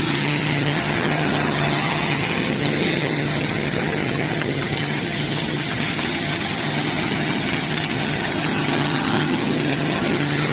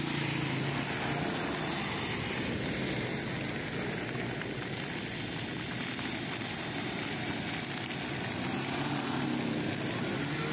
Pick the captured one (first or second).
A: second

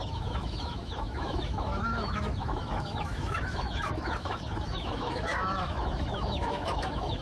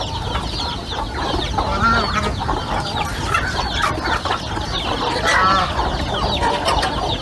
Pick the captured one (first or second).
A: second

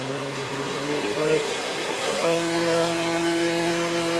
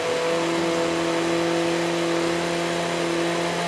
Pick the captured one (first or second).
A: second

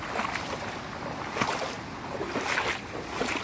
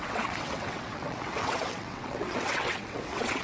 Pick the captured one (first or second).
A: first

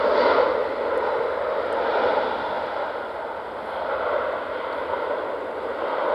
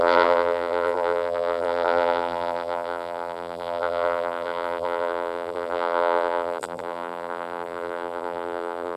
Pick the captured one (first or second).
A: first